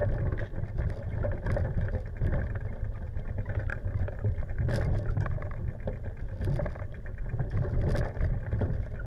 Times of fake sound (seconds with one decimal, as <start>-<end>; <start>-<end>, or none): none